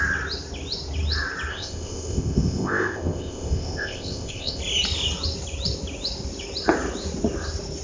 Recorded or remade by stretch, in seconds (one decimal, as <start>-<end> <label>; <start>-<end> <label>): 0.0-1.5 recorded; 1.5-4.6 remade; 4.6-7.8 recorded